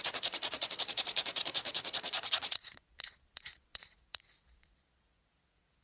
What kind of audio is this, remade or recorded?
remade